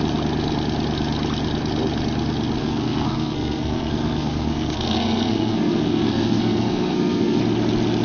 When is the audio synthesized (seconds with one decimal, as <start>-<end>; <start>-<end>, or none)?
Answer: 2.6-7.4